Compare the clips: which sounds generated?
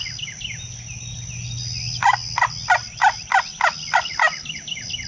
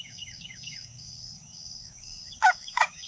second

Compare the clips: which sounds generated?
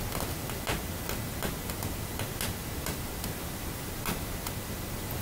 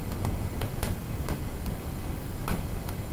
second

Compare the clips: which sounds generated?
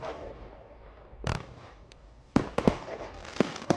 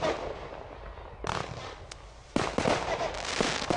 first